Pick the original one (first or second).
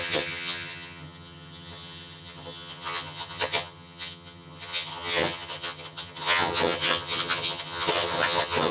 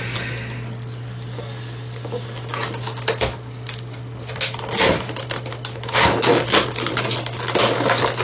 second